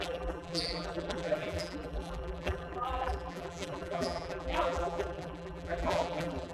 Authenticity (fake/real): fake